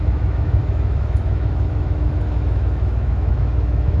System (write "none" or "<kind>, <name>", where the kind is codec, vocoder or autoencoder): autoencoder, DAC-VAE